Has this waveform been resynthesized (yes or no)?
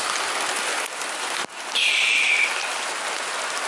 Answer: no